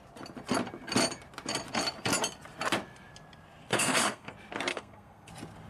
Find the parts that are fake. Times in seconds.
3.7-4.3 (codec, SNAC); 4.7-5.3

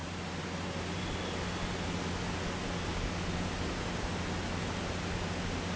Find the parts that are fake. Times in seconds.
none

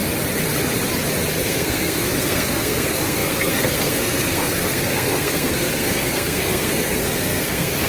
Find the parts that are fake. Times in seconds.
1.4-7.9 (codec, SNAC)

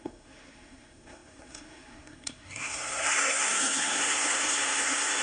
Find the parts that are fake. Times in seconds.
0.0-5.2 (codec, SNAC)

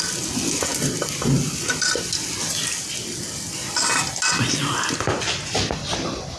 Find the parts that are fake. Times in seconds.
none